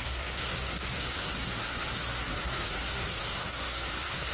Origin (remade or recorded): remade